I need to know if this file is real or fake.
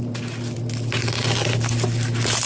real